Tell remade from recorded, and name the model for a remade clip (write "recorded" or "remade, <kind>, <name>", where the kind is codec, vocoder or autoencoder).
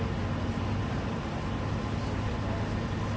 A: recorded